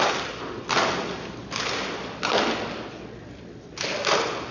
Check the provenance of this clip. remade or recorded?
recorded